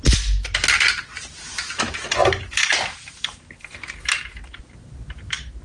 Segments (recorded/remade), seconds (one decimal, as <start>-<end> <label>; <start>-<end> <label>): 0.0-5.6 recorded